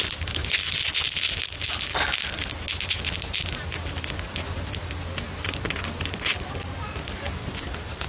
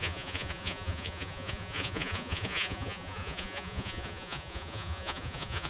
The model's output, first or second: second